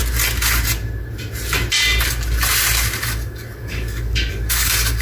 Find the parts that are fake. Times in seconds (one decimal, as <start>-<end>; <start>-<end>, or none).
3.0-5.0